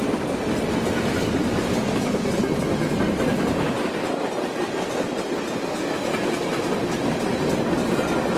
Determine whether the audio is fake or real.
real